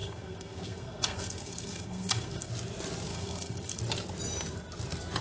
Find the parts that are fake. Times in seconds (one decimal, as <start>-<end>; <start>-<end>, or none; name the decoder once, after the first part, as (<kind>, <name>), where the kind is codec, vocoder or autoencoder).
0.0-2.5 (codec, SNAC); 3.1-3.8